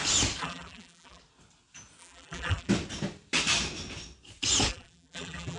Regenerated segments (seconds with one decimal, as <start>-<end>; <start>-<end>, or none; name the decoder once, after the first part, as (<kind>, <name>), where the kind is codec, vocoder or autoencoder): 0.4-1.2 (vocoder, BigVGAN v2); 2.0-2.7; 4.7-5.6